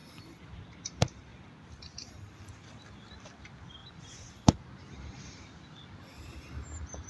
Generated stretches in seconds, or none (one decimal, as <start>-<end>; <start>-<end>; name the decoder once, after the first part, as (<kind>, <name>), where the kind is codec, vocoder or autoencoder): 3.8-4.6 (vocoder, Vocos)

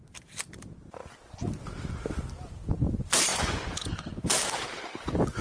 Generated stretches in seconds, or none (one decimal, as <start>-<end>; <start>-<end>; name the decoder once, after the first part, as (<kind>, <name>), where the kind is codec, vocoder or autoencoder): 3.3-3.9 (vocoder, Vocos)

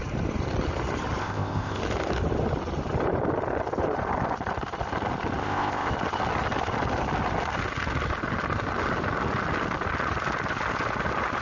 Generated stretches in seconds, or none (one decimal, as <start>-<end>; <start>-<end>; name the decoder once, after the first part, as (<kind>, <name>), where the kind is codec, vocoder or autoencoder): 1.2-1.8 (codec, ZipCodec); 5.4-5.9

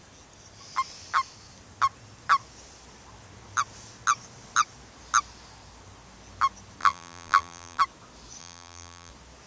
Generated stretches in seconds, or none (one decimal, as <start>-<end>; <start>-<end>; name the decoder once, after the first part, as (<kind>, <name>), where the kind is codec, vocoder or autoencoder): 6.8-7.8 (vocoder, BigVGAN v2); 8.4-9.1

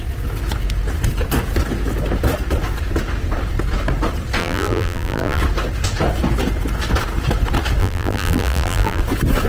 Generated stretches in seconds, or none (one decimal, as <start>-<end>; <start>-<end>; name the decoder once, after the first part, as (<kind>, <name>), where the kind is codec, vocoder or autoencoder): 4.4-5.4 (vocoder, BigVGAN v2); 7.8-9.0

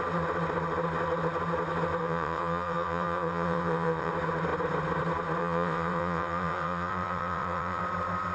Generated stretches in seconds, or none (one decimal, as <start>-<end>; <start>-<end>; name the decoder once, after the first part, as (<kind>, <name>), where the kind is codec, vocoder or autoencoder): 2.0-4.1 (vocoder, WaveNeXt); 5.4-7.8